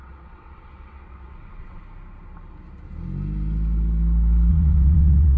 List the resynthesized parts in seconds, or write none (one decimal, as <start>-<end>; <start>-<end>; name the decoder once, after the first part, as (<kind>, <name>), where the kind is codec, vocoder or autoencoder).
0.0-1.8 (vocoder, WaveNeXt); 4.5-5.4